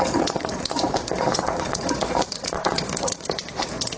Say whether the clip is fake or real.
fake